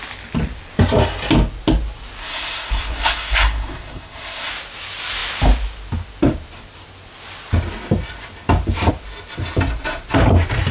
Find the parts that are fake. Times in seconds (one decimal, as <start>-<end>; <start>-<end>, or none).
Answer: 2.2-4.5